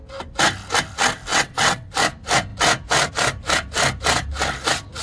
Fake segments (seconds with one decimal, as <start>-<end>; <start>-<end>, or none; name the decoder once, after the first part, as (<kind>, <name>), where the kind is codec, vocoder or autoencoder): 1.3-1.9 (vocoder, WaveNeXt)